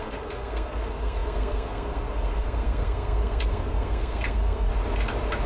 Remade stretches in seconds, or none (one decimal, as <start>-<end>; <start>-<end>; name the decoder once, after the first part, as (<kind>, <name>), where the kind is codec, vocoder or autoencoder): 0.0-4.7 (codec, SNAC)